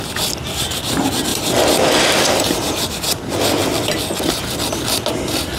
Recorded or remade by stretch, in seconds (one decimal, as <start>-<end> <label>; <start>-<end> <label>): 0.0-5.6 recorded